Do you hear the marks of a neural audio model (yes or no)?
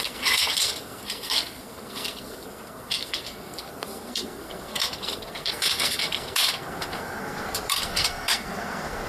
yes